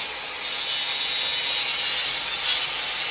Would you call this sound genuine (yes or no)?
yes